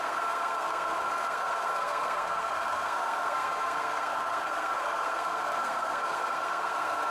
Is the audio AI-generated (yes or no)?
yes